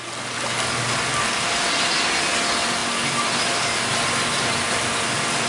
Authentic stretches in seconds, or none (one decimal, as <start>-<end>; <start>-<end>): 0.0-5.5